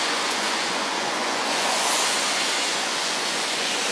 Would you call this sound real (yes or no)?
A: no